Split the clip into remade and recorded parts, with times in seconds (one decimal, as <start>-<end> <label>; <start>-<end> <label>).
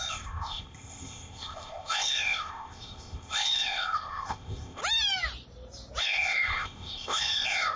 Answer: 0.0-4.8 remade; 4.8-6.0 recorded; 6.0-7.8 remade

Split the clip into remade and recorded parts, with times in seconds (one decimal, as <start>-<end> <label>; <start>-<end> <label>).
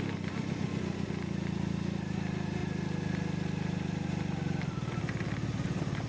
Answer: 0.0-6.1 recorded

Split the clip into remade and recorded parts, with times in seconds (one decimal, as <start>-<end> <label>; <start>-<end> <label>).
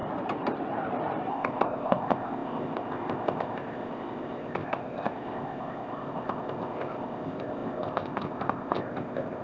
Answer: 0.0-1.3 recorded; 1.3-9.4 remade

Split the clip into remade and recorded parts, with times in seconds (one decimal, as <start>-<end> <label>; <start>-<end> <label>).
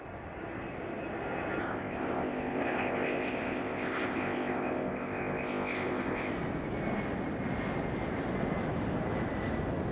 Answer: 0.0-1.6 recorded; 1.6-6.3 remade; 6.3-9.9 recorded